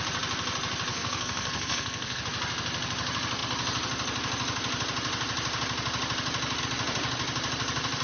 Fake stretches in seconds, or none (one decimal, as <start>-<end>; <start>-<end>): 0.9-2.2